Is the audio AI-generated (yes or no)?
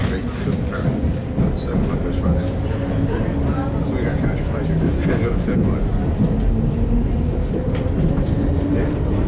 no